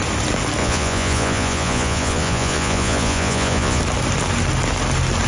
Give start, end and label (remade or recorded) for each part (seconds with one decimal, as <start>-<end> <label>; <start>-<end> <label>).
0.0-0.6 recorded; 0.6-3.8 remade; 3.8-5.3 recorded